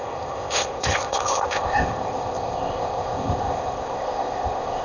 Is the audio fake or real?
fake